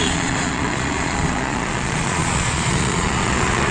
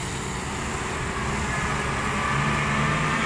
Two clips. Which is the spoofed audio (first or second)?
first